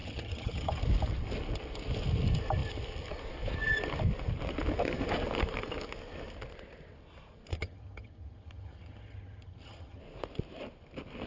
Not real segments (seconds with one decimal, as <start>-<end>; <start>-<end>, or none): 0.0-0.8; 7.5-10.0